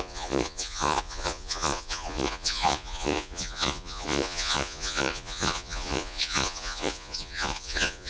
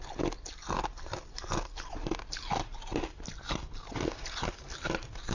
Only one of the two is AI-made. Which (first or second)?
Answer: first